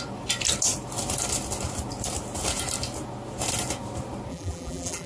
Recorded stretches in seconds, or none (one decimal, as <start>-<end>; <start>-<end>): 0.0-4.3